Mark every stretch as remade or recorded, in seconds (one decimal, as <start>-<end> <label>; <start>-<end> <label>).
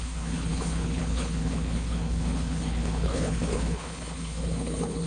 0.0-5.1 remade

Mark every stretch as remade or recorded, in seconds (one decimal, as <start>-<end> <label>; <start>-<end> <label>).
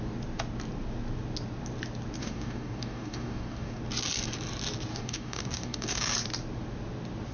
0.0-2.2 recorded; 2.2-3.8 remade; 3.8-4.9 recorded; 4.9-6.0 remade; 6.0-7.3 recorded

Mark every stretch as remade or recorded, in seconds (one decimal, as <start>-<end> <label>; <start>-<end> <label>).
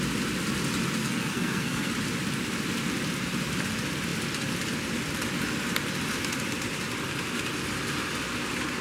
0.0-1.0 recorded; 1.0-1.9 remade; 1.9-8.8 recorded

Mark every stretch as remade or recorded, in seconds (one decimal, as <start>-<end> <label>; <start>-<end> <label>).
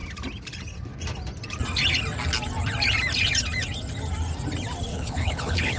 0.0-4.9 recorded; 4.9-5.8 remade